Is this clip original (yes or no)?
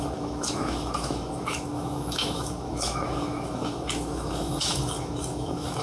no